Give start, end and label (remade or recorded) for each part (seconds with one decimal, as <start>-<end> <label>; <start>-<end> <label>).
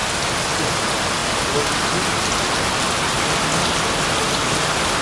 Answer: 0.0-5.0 recorded